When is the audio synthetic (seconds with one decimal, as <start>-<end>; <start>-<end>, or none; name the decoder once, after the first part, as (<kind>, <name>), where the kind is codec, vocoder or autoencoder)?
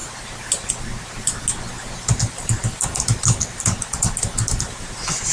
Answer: none